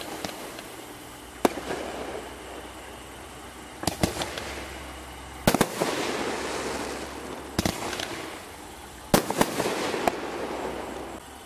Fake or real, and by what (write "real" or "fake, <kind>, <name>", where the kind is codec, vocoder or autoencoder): real